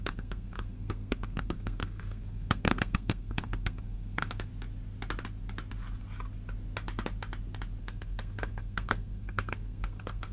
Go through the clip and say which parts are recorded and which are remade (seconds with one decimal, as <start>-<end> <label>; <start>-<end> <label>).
0.0-4.5 remade; 4.5-7.8 recorded; 7.8-10.3 remade